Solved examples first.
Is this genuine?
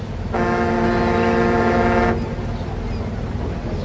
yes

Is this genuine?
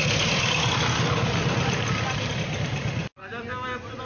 yes